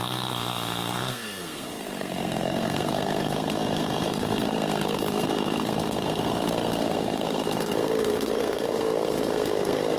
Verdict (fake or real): fake